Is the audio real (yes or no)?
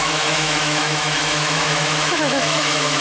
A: no